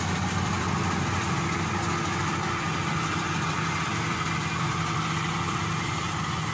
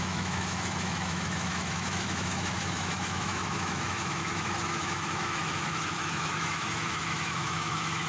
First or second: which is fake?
second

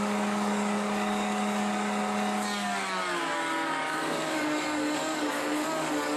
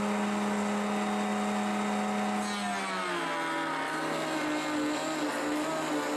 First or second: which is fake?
first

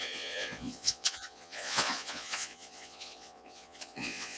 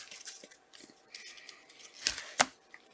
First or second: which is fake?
first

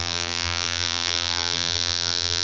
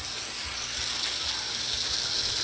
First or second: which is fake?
first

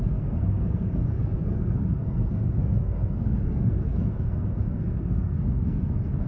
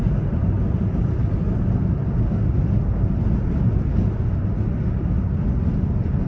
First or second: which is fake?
first